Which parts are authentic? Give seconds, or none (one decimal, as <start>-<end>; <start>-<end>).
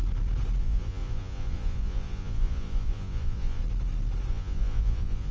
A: 0.0-0.6; 3.6-4.3